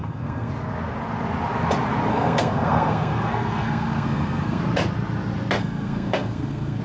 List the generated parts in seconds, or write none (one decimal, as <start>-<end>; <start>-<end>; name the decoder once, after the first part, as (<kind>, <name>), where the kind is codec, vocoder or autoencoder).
0.0-0.5 (codec, SNAC); 2.1-4.6; 5.6-6.8